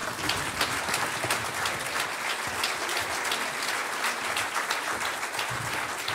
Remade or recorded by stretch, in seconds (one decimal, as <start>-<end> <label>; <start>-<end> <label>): 0.0-6.1 recorded